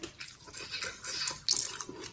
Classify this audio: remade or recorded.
recorded